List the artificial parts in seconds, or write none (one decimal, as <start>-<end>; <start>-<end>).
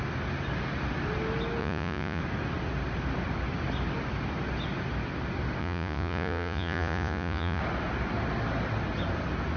1.6-2.2; 5.6-7.6